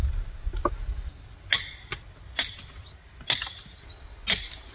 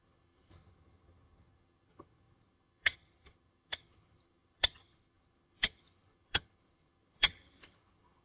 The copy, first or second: second